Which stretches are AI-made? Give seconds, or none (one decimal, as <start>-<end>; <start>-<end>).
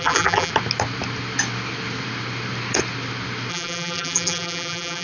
0.0-0.5; 3.5-5.0